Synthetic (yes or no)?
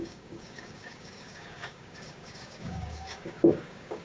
yes